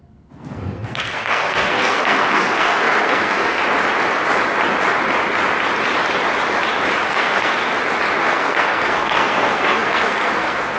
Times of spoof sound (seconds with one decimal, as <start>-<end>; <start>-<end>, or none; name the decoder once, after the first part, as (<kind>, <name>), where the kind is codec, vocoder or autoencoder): 0.0-3.6 (codec, SNAC); 7.1-7.6; 8.2-10.8